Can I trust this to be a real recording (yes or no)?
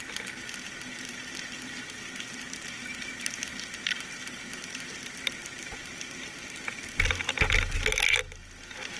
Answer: yes